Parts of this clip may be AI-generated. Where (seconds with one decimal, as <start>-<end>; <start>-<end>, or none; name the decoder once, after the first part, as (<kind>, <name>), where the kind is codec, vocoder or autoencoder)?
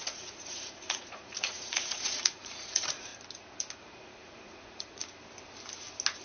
0.0-3.1 (vocoder, Vocos); 3.8-5.0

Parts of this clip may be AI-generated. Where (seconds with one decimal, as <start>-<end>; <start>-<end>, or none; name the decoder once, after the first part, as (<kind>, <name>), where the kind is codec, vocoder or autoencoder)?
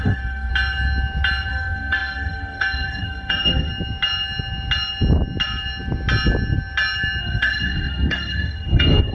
0.0-0.5 (codec, SNAC); 1.5-3.7; 7.2-9.1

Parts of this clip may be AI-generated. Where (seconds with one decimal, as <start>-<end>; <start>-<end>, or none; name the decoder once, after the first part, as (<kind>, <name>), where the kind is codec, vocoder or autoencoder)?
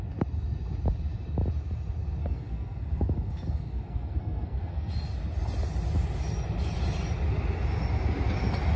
2.2-4.9 (codec, SNAC)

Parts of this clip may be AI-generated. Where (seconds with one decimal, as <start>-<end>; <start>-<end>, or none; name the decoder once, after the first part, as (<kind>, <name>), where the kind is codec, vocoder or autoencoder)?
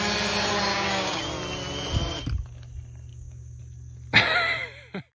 0.7-1.2 (codec, DAC); 3.1-3.6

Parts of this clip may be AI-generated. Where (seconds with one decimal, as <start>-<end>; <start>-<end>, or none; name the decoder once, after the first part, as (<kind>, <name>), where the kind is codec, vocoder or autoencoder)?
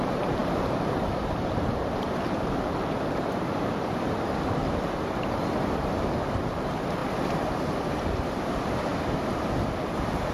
0.0-7.0 (vocoder, BigVGAN v2); 7.9-8.9; 9.9-10.3